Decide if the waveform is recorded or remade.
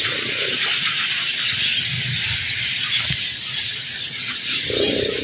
recorded